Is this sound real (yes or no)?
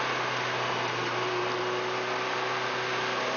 yes